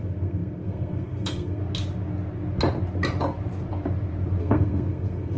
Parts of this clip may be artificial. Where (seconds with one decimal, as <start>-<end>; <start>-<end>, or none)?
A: 0.0-1.6; 4.4-5.4